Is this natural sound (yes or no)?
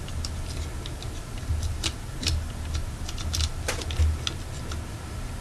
yes